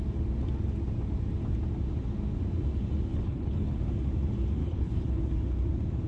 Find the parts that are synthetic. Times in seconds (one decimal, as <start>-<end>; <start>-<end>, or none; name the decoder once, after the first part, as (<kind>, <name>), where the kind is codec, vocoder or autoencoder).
3.1-3.8 (codec, HILCodec); 4.6-5.2